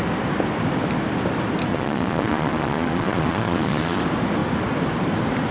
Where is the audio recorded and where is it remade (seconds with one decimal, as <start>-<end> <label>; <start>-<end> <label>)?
0.0-1.7 recorded; 1.7-4.0 remade; 4.0-5.5 recorded